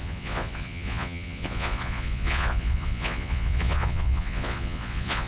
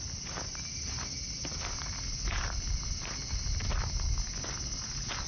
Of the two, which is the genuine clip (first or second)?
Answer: second